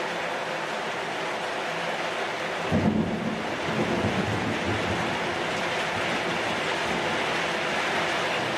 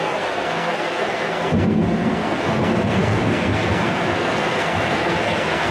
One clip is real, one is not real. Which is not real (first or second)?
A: second